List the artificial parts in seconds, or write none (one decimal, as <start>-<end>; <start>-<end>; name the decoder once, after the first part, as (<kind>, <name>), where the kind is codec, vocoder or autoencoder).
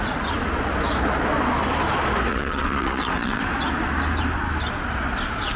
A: 2.3-3.4 (vocoder, WaveNeXt)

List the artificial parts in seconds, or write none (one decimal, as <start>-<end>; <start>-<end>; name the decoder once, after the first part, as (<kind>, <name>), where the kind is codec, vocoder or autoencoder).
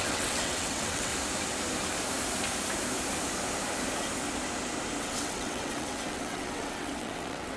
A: 0.0-1.1 (vocoder, WaveNeXt); 5.0-7.6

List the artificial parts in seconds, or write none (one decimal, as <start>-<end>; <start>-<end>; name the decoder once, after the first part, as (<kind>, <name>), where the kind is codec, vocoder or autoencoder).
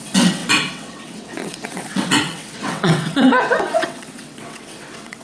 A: 0.0-5.2 (vocoder, WaveNeXt)